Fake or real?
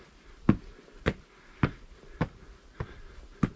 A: real